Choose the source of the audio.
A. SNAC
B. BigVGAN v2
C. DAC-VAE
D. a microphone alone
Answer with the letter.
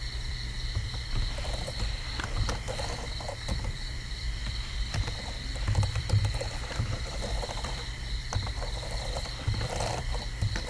B